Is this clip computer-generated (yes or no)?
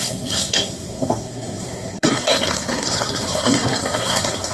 yes